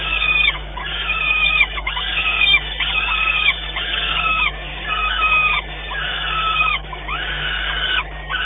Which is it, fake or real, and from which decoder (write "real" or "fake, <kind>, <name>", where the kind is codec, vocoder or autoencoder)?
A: fake, codec, DAC